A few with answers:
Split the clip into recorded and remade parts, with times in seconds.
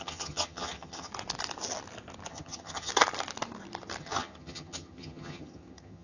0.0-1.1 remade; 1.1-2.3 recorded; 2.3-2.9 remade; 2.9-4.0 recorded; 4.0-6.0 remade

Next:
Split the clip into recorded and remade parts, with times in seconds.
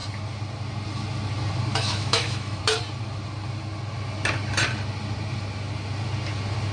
0.0-1.7 recorded; 1.7-2.6 remade; 2.6-6.7 recorded